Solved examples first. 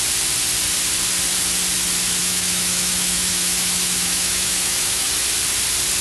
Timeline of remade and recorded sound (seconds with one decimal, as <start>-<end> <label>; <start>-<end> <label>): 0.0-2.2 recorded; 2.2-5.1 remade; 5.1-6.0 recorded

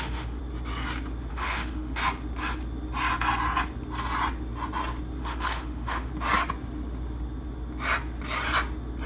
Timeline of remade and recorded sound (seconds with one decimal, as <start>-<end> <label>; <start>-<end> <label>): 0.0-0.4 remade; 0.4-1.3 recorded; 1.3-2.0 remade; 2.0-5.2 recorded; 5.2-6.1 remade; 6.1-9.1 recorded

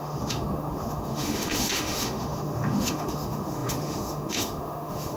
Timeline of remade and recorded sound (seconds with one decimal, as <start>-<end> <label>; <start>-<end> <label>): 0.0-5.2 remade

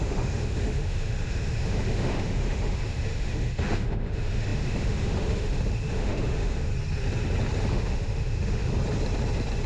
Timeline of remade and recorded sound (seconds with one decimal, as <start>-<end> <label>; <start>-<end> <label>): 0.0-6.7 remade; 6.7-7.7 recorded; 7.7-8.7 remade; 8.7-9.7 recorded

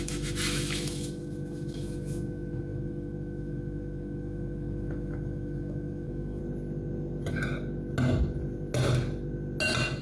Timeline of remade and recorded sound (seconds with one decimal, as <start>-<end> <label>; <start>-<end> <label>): 0.0-6.4 remade; 6.4-10.0 recorded

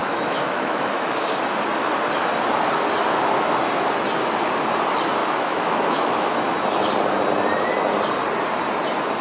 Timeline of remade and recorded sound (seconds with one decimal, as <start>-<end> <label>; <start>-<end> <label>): 0.0-1.4 remade; 1.4-5.2 recorded; 5.2-6.3 remade; 6.3-9.2 recorded